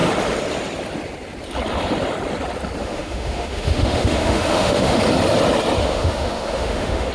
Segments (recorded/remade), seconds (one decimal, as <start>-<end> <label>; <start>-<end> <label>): 0.0-2.8 recorded; 2.8-5.0 remade; 5.0-5.8 recorded; 5.8-7.1 remade